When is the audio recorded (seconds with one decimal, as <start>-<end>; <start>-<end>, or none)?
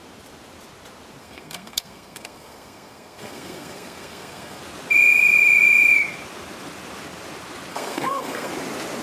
0.0-1.2; 4.6-7.7; 8.5-9.0